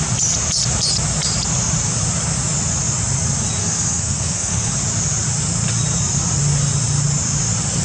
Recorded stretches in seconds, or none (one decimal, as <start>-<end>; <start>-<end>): 0.0-3.6; 4.7-7.8